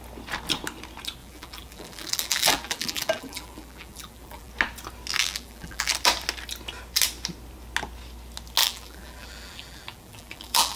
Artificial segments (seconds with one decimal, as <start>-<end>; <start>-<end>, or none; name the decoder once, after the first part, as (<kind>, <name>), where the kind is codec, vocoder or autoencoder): 1.2-4.5 (vocoder, BigVGAN v2); 5.2-5.9; 8.6-10.8